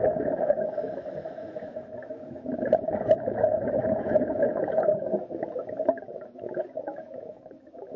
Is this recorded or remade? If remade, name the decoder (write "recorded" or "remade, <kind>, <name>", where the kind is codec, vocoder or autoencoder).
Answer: remade, autoencoder, DAC-VAE